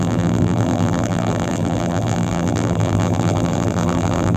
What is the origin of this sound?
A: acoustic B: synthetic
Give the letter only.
B